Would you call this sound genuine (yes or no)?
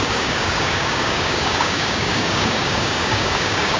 no